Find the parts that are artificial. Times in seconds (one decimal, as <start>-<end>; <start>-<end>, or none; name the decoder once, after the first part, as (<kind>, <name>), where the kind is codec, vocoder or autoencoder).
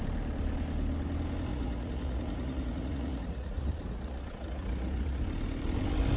1.5-5.2 (vocoder, Vocos)